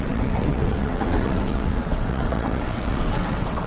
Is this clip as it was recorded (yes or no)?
no